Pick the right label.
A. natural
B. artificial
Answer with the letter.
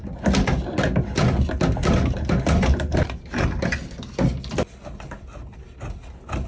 A